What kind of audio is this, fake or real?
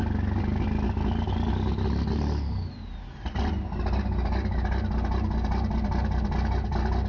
real